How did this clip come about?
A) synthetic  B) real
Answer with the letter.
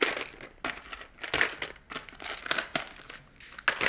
B